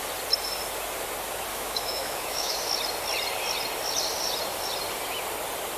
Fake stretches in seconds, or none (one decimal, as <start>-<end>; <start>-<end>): 1.5-2.6